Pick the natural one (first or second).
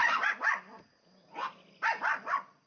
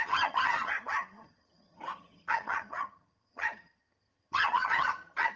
first